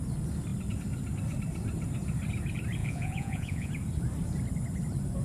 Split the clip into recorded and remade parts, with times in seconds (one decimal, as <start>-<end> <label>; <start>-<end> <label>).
0.0-2.8 recorded; 2.8-3.7 remade; 3.7-5.2 recorded